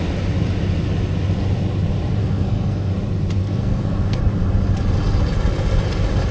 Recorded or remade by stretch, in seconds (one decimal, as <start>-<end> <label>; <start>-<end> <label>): 0.0-2.2 recorded; 2.2-2.9 remade; 2.9-3.4 recorded; 3.4-4.2 remade; 4.2-6.3 recorded